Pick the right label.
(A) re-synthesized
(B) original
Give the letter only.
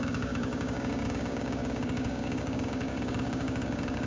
A